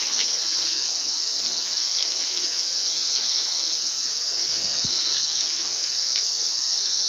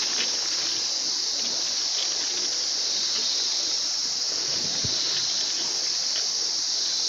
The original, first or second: second